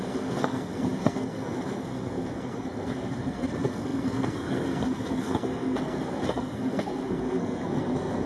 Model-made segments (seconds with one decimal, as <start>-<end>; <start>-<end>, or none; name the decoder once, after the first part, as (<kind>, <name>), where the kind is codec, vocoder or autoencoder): 0.0-8.3 (codec, SNAC)